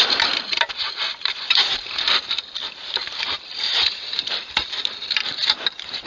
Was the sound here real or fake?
fake